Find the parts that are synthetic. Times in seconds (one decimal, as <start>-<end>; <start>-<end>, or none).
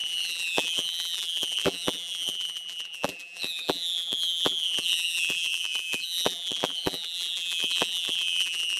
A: 0.0-8.8